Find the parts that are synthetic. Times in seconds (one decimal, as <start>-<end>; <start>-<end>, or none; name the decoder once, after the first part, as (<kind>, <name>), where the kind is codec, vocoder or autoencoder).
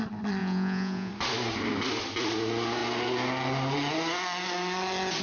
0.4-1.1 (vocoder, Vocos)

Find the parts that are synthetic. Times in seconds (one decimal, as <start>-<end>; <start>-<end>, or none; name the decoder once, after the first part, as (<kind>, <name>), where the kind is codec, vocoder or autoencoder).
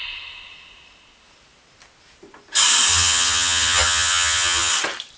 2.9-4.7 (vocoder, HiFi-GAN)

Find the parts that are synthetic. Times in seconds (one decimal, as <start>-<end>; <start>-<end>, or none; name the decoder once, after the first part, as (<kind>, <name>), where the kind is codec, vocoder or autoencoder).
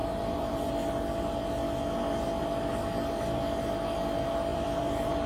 0.0-0.7 (vocoder, BigVGAN v2); 4.5-5.3